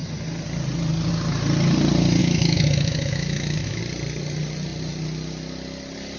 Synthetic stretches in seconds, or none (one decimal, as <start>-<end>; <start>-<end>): 2.2-3.8